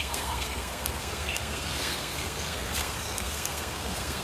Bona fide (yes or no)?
no